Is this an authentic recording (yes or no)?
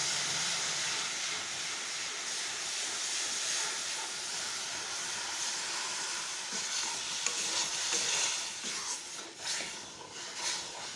yes